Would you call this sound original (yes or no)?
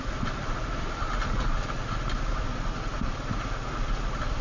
yes